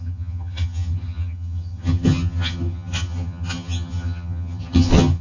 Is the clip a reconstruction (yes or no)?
yes